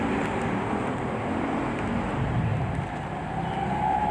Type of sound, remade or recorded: remade